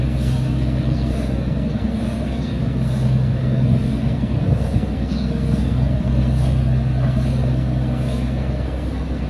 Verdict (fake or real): fake